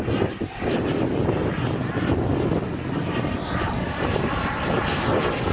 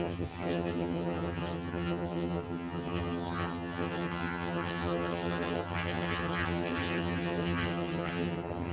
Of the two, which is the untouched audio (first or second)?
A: first